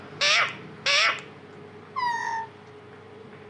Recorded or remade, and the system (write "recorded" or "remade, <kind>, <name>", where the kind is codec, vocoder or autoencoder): recorded